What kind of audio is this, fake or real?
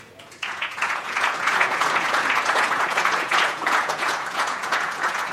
fake